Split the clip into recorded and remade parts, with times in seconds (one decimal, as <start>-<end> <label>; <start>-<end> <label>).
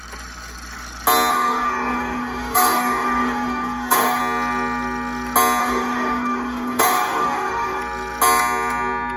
0.0-1.3 recorded; 1.3-4.2 remade; 4.2-5.6 recorded; 5.6-7.8 remade; 7.8-9.2 recorded